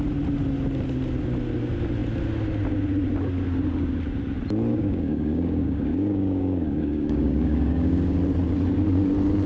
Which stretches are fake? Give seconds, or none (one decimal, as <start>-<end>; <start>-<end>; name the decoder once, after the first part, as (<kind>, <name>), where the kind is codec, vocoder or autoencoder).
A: 4.7-8.2 (codec, DAC)